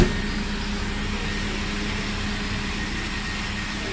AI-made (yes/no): no